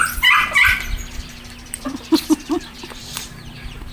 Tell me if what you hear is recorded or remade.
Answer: remade